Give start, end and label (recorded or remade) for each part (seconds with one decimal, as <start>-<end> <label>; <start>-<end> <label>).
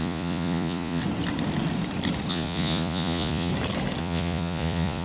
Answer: 0.0-1.0 remade; 1.0-2.3 recorded; 2.3-3.5 remade; 3.5-4.0 recorded; 4.0-5.0 remade